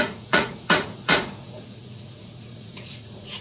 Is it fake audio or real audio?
fake